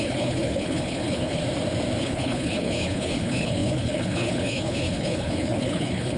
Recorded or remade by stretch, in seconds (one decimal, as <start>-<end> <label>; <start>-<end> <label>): 0.0-1.4 remade; 1.4-2.0 recorded; 2.0-6.2 remade